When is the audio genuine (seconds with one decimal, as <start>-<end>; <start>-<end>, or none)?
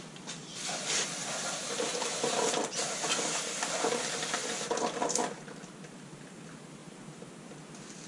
4.4-5.9; 6.8-8.1